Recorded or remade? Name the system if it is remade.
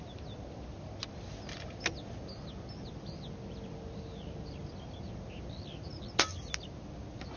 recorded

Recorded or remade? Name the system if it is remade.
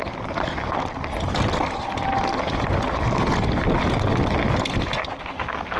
recorded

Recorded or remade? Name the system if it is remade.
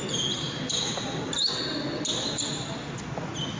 recorded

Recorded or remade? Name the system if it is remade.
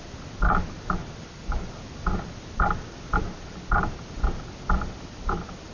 recorded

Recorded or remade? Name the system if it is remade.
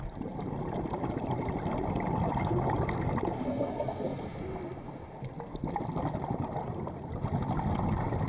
recorded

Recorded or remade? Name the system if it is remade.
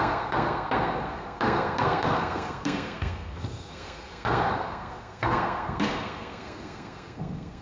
remade, codec, SNAC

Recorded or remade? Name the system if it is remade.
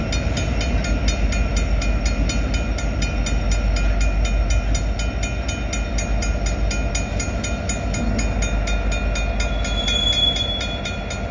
recorded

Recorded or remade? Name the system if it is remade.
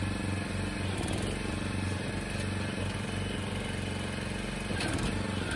recorded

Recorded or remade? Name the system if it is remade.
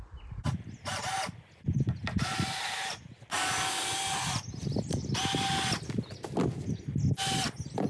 recorded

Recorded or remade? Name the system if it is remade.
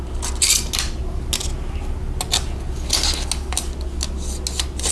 recorded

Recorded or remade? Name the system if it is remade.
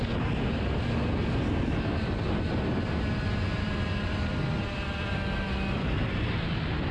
recorded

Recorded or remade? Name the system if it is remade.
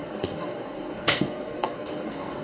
remade, codec, SNAC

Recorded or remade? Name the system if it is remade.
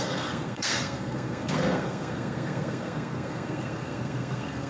remade, codec, SNAC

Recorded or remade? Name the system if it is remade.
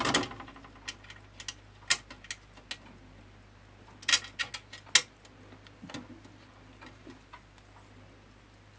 recorded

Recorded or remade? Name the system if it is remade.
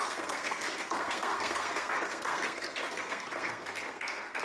remade, codec, SNAC